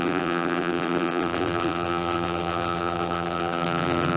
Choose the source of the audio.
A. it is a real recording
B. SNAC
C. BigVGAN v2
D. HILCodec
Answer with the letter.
C